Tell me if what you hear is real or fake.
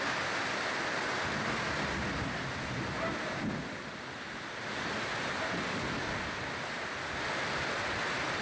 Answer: real